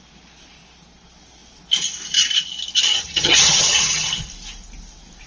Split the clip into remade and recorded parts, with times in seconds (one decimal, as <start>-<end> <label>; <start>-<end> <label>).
0.0-2.9 recorded; 2.9-4.2 remade; 4.2-5.3 recorded